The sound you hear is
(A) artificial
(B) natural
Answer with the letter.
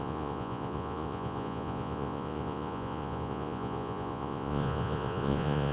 A